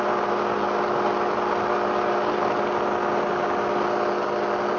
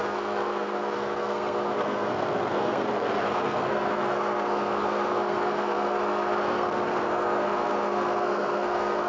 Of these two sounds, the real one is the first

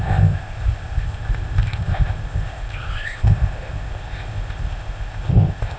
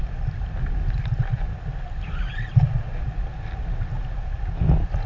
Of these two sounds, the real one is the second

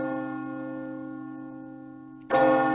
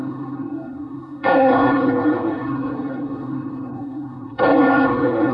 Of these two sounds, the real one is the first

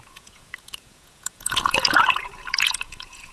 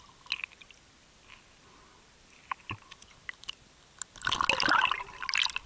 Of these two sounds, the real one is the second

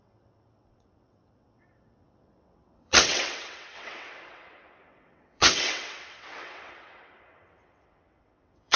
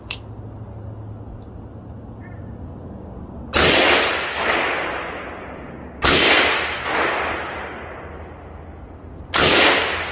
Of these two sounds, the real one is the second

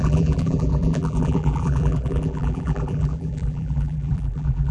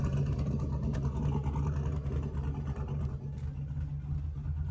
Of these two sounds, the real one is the second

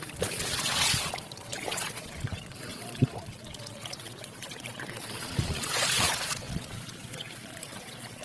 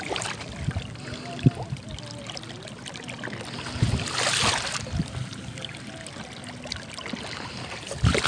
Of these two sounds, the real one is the second